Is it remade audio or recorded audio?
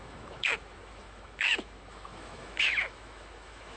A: remade